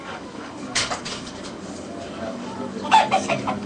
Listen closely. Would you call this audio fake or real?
fake